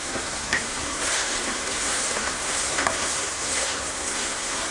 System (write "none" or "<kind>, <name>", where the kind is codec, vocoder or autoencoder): codec, SNAC